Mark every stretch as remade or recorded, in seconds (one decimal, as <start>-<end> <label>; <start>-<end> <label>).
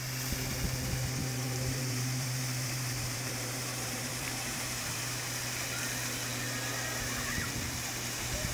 0.0-1.2 recorded; 1.2-5.0 remade; 5.0-8.5 recorded